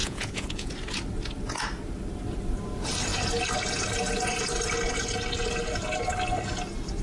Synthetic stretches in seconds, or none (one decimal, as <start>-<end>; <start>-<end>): 0.0-0.7